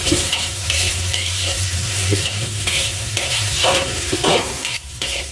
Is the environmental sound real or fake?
fake